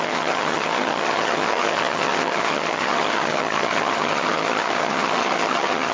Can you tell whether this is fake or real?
fake